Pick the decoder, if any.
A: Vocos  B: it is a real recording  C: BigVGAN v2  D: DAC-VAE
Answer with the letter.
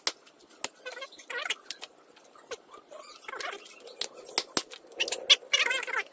B